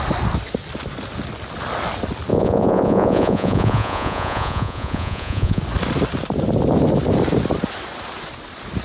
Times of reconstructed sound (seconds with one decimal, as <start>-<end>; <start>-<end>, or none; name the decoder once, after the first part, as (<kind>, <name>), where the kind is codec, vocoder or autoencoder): 2.3-5.6 (vocoder, Vocos)